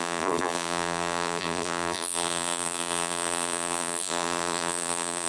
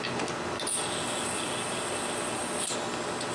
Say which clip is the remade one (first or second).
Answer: first